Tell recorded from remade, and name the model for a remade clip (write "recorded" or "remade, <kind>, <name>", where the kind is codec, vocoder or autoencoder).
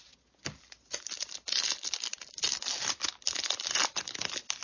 recorded